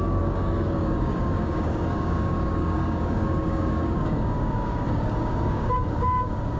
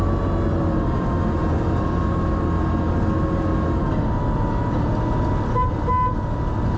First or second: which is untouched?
second